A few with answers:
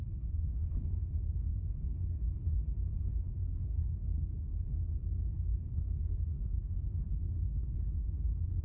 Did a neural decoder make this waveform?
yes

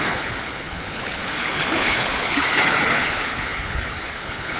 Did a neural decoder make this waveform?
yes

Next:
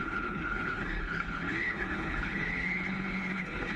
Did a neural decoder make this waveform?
yes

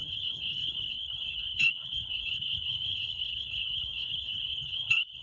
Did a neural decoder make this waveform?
yes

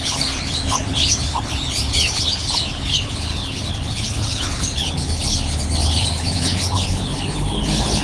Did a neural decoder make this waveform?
yes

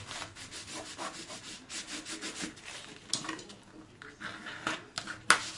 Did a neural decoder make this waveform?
no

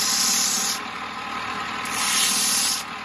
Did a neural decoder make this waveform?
no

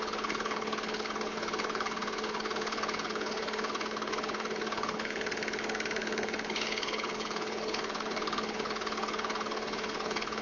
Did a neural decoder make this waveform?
yes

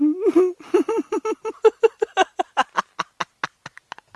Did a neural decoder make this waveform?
no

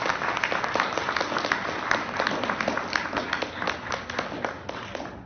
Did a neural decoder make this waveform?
no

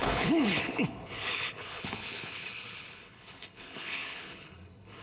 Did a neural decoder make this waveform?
yes